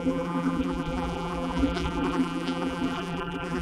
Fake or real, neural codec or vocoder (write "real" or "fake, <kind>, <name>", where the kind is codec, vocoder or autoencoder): fake, vocoder, BigVGAN v2